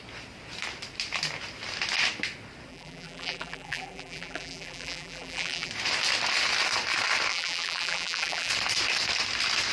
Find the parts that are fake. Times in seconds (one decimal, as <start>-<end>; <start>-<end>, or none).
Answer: 2.7-5.7; 7.3-8.5